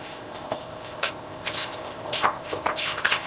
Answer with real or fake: fake